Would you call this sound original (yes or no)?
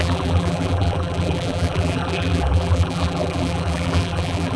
no